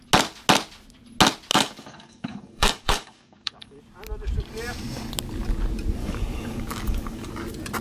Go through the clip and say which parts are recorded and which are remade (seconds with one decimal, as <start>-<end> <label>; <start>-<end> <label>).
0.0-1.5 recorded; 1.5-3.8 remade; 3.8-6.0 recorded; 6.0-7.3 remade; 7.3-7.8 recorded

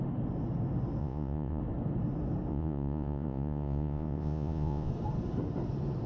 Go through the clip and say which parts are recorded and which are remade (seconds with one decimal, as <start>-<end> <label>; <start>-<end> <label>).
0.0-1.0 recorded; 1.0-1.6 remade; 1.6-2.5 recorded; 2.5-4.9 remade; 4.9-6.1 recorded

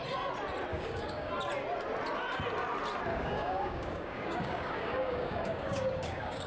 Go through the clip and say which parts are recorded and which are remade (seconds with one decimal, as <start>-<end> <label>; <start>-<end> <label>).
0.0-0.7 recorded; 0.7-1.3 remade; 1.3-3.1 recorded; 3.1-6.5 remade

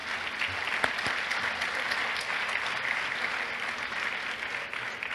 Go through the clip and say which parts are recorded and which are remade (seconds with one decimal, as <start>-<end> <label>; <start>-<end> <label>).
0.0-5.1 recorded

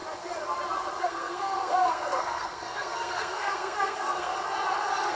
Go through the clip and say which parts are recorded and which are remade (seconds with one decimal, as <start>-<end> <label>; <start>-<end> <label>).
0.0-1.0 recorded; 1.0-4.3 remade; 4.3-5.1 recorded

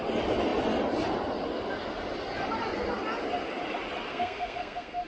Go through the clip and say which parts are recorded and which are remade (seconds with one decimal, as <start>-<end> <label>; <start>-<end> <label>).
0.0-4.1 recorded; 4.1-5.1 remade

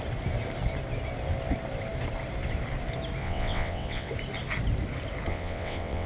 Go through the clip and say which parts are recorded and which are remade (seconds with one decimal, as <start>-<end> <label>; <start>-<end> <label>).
0.0-3.2 recorded; 3.2-4.1 remade; 4.1-5.3 recorded; 5.3-6.1 remade